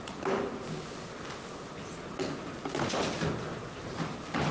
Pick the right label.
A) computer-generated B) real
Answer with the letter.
B